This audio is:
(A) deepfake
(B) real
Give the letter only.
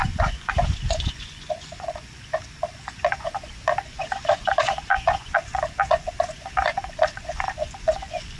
A